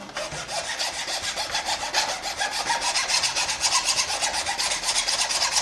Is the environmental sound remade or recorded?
recorded